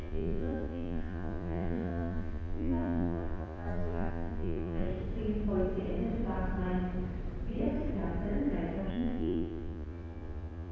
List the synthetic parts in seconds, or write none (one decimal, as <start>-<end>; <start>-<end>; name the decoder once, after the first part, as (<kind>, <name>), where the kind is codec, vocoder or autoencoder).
0.0-4.9 (vocoder, Vocos); 8.9-10.7